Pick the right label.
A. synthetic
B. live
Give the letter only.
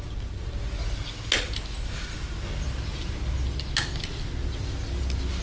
B